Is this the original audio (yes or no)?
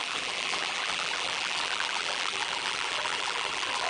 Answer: no